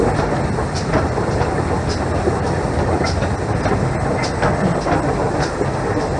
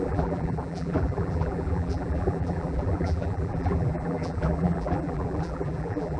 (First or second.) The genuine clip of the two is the first